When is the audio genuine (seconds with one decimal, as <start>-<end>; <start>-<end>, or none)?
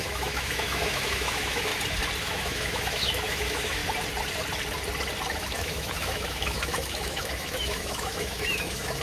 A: 1.7-2.2; 3.8-5.3